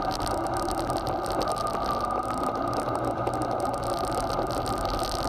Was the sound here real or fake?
real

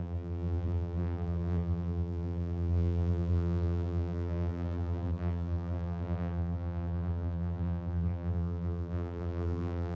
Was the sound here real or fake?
fake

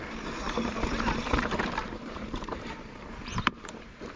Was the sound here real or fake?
fake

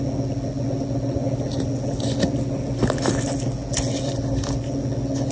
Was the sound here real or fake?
real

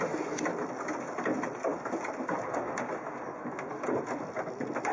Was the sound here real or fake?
real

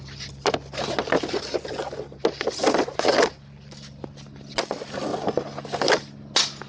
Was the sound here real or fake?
real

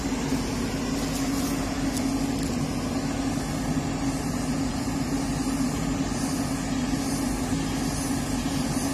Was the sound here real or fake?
real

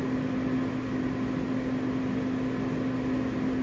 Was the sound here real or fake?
real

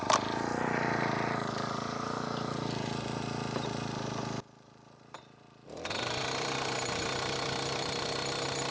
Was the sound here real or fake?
fake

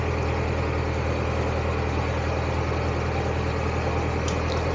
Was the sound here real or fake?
real